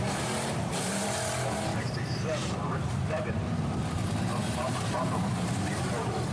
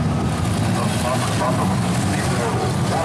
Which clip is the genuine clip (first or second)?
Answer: second